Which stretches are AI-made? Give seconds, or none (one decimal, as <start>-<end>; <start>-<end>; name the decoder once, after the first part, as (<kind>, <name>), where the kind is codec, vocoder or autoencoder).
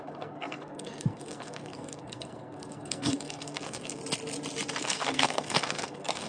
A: 0.0-4.0 (codec, SNAC); 4.8-6.3